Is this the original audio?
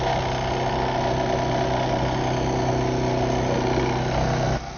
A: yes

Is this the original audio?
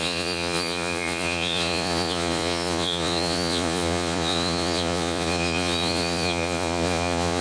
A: no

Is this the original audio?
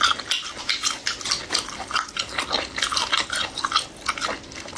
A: yes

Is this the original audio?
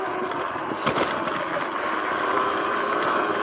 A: yes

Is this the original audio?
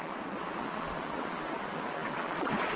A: no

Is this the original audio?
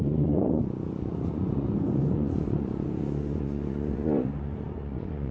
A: no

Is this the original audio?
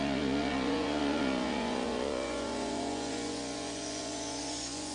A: no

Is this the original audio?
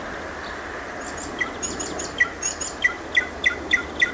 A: yes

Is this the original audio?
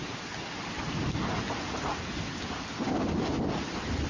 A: yes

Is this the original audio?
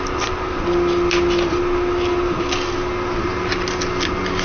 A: yes